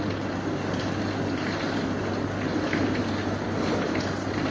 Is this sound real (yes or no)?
yes